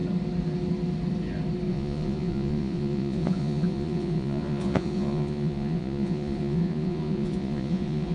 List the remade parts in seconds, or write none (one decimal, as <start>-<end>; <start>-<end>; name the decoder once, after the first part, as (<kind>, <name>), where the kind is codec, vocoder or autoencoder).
1.7-8.1 (vocoder, Vocos)